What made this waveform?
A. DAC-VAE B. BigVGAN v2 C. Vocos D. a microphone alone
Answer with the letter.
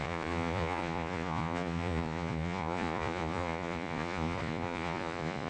C